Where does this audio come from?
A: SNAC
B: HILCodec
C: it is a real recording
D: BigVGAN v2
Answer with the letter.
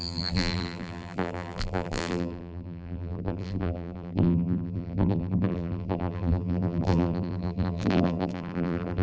D